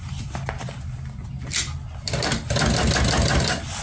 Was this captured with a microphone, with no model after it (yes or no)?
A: yes